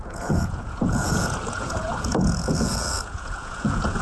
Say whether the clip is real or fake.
fake